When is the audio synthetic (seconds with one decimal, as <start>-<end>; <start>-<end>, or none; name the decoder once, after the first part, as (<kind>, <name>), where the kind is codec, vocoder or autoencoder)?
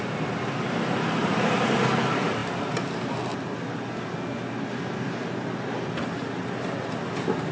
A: 1.2-2.0 (vocoder, BigVGAN v2)